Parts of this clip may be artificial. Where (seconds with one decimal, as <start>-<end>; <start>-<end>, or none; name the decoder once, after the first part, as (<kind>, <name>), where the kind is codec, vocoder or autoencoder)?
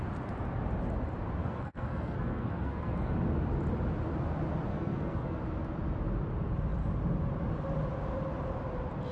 1.4-3.1 (codec, SNAC); 4.7-5.4